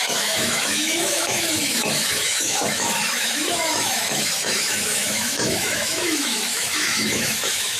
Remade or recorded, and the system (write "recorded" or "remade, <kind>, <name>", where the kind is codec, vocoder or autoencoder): remade, autoencoder, DAC-VAE